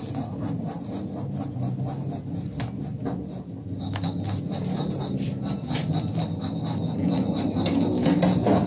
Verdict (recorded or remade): recorded